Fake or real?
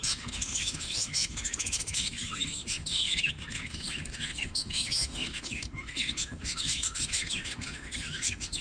fake